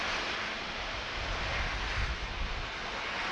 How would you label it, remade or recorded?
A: recorded